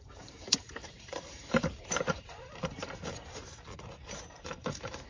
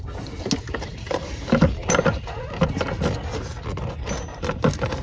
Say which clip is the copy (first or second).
first